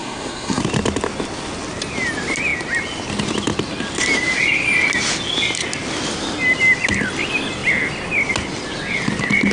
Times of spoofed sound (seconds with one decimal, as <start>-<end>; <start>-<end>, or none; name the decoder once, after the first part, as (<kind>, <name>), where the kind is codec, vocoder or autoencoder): 0.0-0.6 (codec, SNAC)